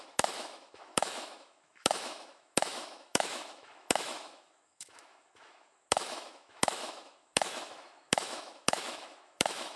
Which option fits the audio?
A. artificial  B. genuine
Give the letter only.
A